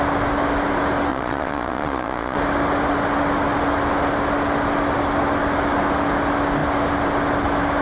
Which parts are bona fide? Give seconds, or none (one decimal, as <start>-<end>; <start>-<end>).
0.0-1.1; 2.4-7.8